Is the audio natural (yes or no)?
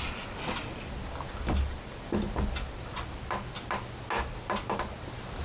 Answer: yes